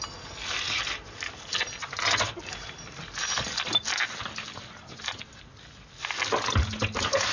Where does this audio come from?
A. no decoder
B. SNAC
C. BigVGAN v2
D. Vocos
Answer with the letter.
A